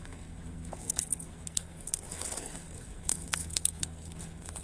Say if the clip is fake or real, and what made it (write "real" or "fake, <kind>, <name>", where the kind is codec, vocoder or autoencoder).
fake, codec, SNAC